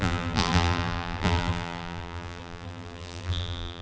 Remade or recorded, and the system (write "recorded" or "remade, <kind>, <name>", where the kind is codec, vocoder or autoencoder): remade, vocoder, BigVGAN v2